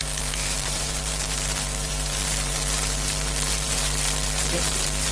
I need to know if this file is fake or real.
fake